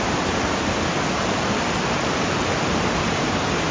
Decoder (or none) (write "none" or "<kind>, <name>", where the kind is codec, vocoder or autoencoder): none